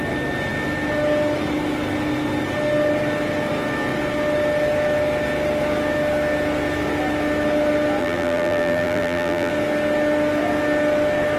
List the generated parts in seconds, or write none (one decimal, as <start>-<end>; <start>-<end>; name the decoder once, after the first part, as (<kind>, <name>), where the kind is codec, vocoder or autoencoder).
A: 8.0-9.5 (vocoder, BigVGAN v2)